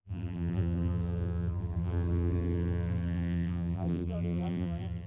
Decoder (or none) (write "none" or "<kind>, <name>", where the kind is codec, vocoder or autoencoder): vocoder, BigVGAN v2